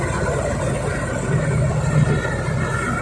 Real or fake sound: real